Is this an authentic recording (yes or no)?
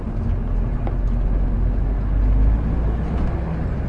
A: yes